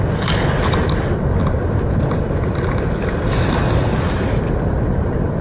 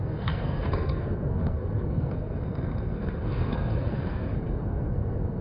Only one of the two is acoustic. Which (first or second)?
first